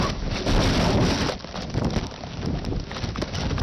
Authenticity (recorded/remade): recorded